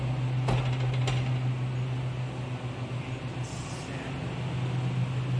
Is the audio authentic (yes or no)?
yes